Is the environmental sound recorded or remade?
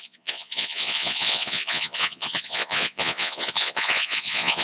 remade